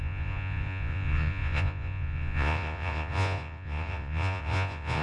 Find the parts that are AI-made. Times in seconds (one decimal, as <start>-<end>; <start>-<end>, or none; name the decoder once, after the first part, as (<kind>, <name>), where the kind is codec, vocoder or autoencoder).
0.0-5.0 (vocoder, Vocos)